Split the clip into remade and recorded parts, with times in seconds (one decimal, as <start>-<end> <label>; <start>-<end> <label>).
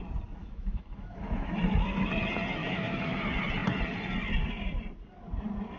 0.0-0.4 recorded; 0.4-1.6 remade; 1.6-2.6 recorded; 2.6-3.2 remade; 3.2-5.8 recorded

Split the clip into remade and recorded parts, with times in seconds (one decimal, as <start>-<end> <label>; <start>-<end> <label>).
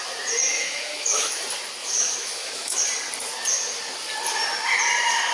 0.0-0.5 recorded; 0.5-1.4 remade; 1.4-1.8 recorded; 1.8-2.8 remade; 2.8-5.3 recorded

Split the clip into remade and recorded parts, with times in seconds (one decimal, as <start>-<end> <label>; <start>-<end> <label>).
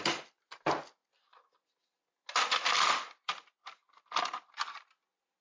0.0-5.4 recorded